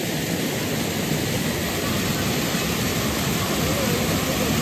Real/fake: real